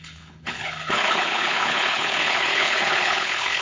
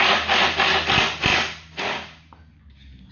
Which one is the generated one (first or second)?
first